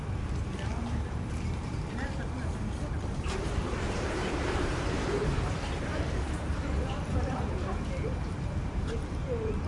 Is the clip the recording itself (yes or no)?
no